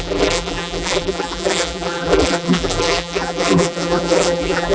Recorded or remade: remade